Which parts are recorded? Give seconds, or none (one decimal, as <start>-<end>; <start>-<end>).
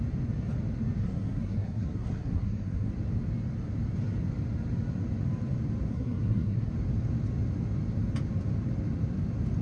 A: 0.0-1.0; 2.9-5.9; 6.7-9.6